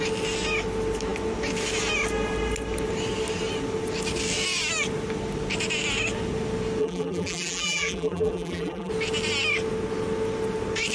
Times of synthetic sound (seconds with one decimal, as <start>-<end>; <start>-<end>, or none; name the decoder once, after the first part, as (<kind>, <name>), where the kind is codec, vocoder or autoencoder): 6.8-8.9 (vocoder, BigVGAN v2)

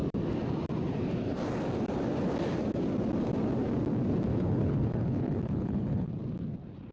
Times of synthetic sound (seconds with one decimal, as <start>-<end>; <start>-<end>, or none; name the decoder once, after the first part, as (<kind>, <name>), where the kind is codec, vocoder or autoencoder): 4.3-6.1 (codec, HILCodec)

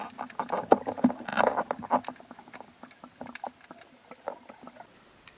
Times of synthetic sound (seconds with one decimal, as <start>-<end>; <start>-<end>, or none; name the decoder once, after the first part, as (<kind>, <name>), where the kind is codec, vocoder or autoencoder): none

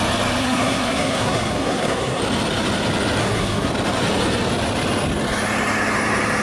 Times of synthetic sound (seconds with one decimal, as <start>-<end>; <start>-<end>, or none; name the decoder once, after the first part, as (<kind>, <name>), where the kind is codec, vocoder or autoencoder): 0.4-2.2 (codec, SNAC); 3.2-3.7

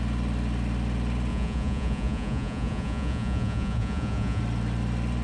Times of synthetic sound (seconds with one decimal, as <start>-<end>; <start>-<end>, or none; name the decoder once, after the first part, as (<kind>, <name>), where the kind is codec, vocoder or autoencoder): 1.3-4.4 (vocoder, Vocos)